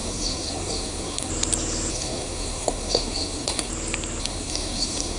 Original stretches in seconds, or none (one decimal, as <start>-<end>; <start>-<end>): 1.3-1.9; 3.7-4.2